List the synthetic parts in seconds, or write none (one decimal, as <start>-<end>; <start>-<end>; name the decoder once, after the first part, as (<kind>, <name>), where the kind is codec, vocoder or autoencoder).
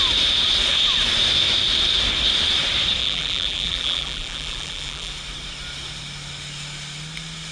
3.0-5.1 (vocoder, BigVGAN v2)